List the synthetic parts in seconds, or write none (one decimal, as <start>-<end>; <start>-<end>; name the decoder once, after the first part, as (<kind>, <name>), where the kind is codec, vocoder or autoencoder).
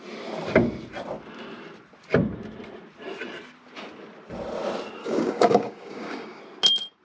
5.0-6.4 (codec, DAC)